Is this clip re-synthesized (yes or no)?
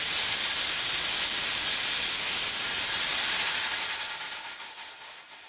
no